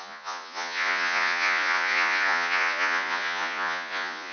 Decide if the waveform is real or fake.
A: fake